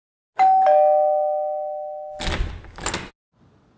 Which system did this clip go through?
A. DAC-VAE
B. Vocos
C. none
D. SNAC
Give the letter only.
C